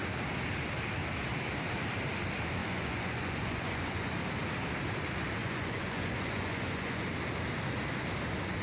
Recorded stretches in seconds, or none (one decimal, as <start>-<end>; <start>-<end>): 0.0-2.6; 4.1-5.4; 7.0-8.6